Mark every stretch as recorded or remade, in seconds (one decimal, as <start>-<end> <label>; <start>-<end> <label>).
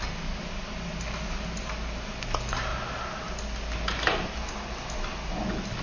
0.0-5.8 recorded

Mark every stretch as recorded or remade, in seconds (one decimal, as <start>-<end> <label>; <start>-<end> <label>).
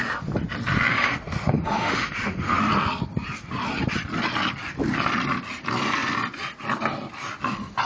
0.0-0.9 recorded; 0.9-2.6 remade; 2.6-7.8 recorded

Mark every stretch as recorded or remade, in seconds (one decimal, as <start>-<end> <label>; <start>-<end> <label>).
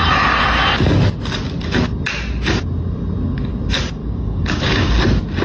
0.0-4.0 recorded; 4.0-4.9 remade; 4.9-5.4 recorded